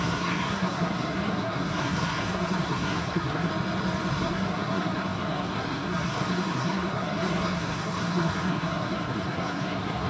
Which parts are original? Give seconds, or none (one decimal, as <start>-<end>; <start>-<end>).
3.5-4.1